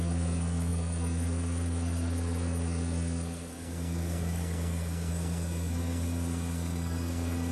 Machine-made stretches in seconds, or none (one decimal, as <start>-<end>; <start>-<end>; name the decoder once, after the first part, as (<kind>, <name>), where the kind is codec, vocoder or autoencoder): 0.0-7.5 (codec, SNAC)